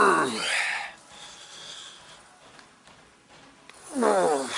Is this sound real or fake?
real